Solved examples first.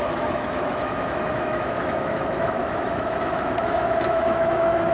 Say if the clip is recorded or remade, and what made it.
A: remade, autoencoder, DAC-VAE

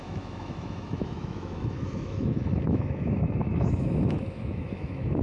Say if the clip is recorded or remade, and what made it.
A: remade, autoencoder, DAC-VAE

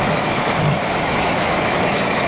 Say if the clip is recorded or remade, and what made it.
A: remade, autoencoder, DAC-VAE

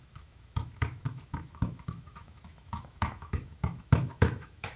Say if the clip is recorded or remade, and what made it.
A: remade, autoencoder, DAC-VAE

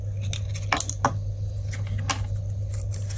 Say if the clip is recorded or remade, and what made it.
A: recorded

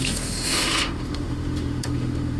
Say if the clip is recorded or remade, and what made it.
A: remade, autoencoder, DAC-VAE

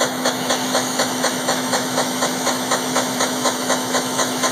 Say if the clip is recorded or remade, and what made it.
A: remade, autoencoder, DAC-VAE